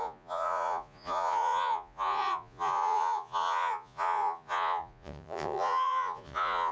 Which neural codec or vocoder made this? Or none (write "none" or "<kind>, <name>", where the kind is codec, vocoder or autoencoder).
vocoder, Vocos